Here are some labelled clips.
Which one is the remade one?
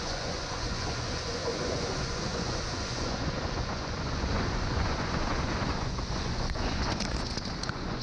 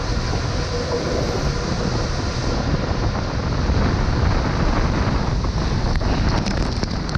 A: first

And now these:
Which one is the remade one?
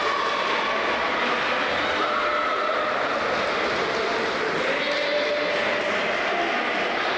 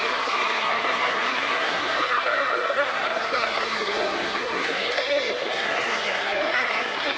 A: second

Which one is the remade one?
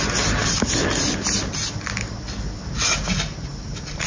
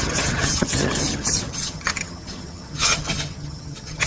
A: second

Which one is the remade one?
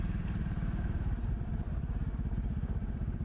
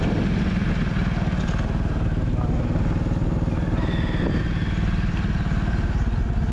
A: first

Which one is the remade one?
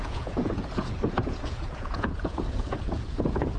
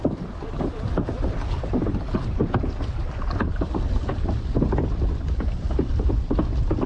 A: first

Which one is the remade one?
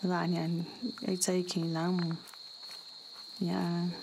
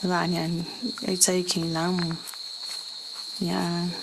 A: second